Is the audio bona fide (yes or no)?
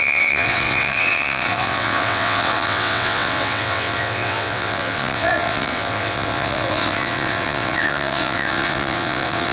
no